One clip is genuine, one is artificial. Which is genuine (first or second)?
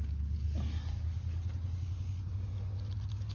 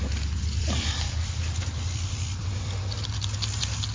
first